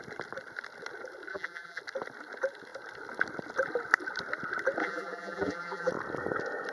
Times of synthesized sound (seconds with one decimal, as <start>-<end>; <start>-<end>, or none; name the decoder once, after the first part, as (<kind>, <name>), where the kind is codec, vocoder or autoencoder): 1.3-1.8 (vocoder, BigVGAN v2); 4.8-5.9